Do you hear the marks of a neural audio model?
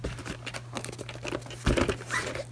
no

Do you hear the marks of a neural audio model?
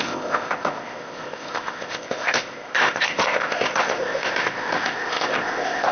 yes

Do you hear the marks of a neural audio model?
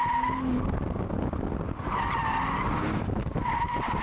no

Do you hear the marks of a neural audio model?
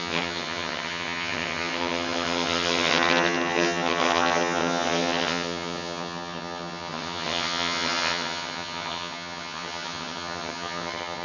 yes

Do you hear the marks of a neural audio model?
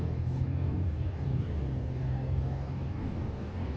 yes